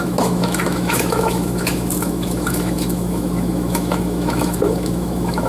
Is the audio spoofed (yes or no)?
yes